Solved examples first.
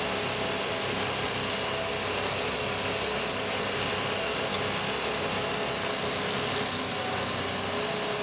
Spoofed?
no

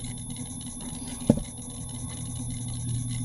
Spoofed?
no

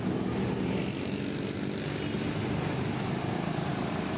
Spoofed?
no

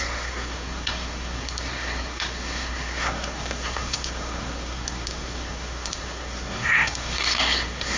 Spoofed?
yes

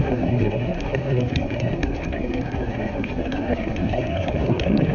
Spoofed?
yes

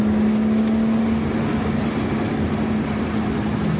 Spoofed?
no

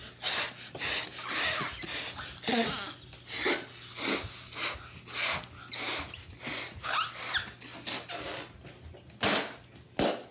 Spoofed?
no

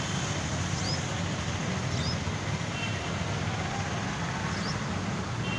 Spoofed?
no